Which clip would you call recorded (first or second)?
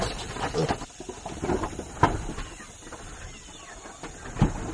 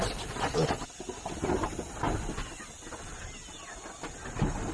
second